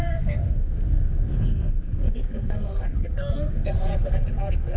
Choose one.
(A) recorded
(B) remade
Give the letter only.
B